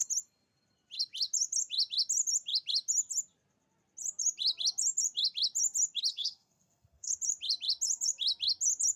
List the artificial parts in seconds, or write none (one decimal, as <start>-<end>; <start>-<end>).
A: 6.1-7.1